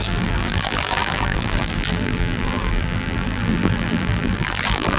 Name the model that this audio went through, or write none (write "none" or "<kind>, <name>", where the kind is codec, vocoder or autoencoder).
vocoder, BigVGAN v2